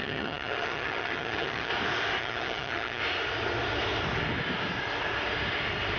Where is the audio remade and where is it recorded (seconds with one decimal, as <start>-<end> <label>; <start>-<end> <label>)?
0.0-1.7 remade; 1.7-2.2 recorded; 2.2-3.0 remade; 3.0-6.0 recorded